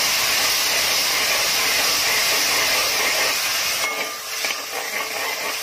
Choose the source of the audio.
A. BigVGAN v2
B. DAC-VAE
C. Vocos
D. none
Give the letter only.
D